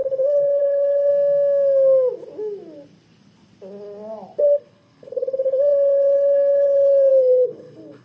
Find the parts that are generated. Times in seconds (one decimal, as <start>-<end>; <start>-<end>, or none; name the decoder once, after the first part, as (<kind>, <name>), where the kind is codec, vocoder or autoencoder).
0.0-1.1 (codec, HILCodec); 4.4-8.0